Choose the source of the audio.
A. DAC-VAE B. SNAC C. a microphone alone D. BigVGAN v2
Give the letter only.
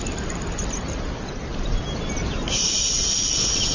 C